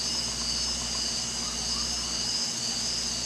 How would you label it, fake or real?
real